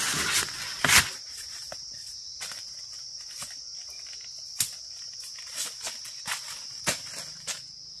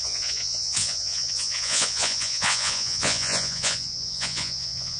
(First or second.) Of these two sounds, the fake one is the second